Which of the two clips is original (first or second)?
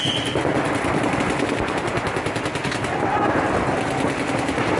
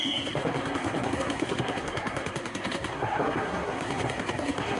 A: first